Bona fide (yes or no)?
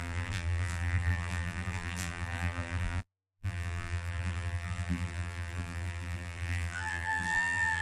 no